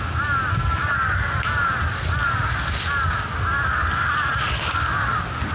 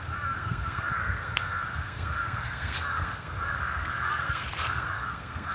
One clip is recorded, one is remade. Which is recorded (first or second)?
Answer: first